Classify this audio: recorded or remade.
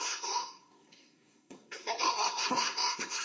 remade